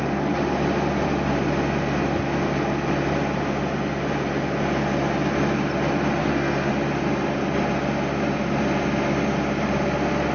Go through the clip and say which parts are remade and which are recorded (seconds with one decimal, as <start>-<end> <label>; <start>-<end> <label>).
0.0-6.2 recorded; 6.2-6.7 remade; 6.7-10.3 recorded